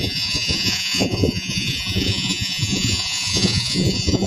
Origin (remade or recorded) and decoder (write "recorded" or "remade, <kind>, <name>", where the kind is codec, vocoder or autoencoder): remade, vocoder, Vocos